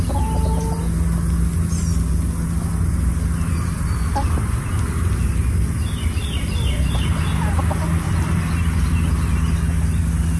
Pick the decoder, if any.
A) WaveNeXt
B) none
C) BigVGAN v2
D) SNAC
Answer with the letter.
B